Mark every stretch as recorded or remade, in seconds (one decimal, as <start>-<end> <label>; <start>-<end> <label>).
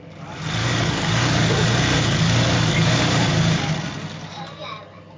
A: 0.0-0.6 recorded; 0.6-3.7 remade; 3.7-5.2 recorded